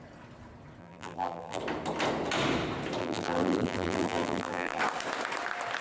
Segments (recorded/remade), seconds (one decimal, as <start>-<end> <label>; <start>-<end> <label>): 0.0-0.8 recorded; 0.8-1.6 remade; 1.6-3.0 recorded; 3.0-4.8 remade; 4.8-5.8 recorded